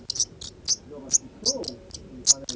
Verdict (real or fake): real